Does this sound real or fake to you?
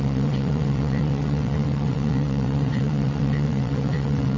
fake